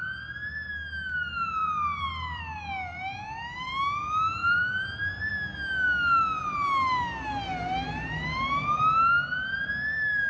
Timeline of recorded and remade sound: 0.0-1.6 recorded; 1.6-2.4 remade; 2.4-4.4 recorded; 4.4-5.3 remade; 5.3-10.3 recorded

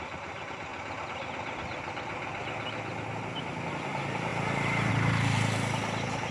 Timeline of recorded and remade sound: 0.0-0.7 remade; 0.7-3.7 recorded; 3.7-6.3 remade